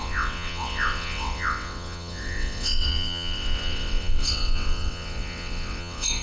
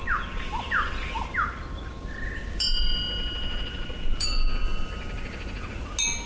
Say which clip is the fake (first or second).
first